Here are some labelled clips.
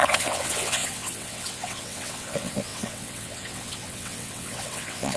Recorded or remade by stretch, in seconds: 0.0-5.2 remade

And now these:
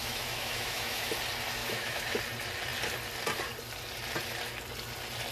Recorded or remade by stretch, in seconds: 0.0-1.1 remade; 1.1-1.6 recorded; 1.6-2.2 remade; 2.2-5.3 recorded

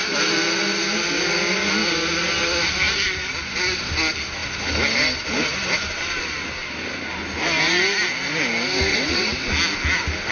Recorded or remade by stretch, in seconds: 0.0-8.9 recorded; 8.9-9.5 remade; 9.5-10.3 recorded

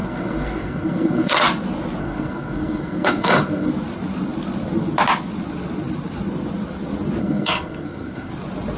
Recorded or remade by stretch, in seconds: 0.0-1.3 remade; 1.3-2.0 recorded; 2.0-3.7 remade; 3.7-7.2 recorded; 7.2-8.3 remade; 8.3-8.8 recorded